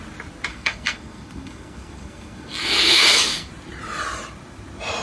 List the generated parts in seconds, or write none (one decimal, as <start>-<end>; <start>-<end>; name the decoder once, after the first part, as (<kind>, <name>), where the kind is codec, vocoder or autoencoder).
0.5-3.5 (codec, SNAC)